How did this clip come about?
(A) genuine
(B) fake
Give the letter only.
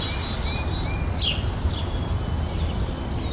A